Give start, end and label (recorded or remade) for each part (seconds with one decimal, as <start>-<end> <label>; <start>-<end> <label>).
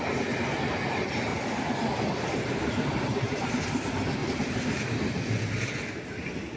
0.0-1.3 recorded; 1.3-2.9 remade; 2.9-4.2 recorded; 4.2-4.8 remade; 4.8-6.6 recorded